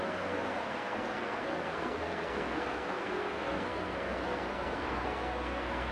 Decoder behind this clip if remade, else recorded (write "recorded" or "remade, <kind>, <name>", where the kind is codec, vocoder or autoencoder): remade, codec, SNAC